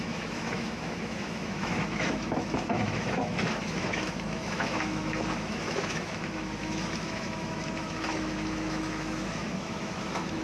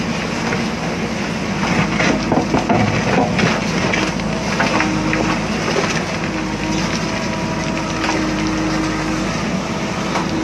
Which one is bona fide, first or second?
second